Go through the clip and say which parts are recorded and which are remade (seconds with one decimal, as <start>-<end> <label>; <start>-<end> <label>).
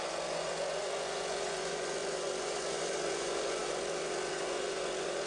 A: 0.0-5.3 remade